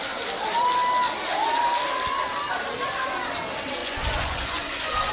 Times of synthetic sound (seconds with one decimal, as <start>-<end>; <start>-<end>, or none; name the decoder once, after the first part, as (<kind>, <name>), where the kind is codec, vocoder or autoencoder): 3.8-5.1 (vocoder, Vocos)